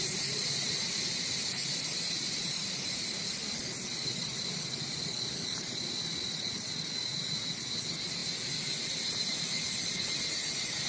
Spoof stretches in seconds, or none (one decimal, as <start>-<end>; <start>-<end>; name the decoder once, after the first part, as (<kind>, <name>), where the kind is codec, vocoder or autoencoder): none